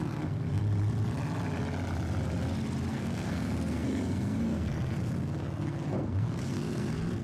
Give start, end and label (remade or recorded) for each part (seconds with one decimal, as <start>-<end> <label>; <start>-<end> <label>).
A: 0.0-0.6 remade; 0.6-2.9 recorded; 2.9-7.2 remade